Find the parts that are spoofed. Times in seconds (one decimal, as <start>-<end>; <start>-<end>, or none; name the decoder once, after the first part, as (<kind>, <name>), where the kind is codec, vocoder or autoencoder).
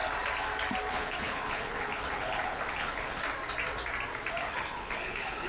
0.9-3.2 (codec, HILCodec); 4.3-5.5